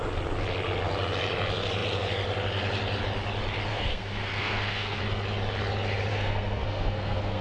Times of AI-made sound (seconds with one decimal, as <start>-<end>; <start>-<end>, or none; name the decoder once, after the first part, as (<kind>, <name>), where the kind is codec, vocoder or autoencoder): 3.7-5.0 (codec, SNAC); 6.1-7.4